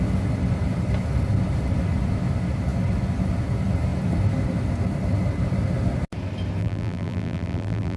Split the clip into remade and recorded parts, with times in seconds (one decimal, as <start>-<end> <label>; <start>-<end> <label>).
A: 0.0-6.6 recorded; 6.6-8.0 remade